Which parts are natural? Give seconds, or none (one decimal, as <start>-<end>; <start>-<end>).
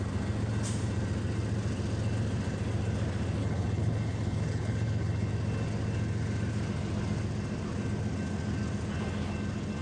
0.0-3.4; 5.3-9.8